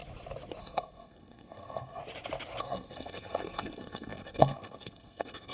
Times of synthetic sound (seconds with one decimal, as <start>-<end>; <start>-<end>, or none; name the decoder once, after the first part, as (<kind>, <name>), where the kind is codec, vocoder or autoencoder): 0.6-2.0 (codec, SNAC); 2.6-5.5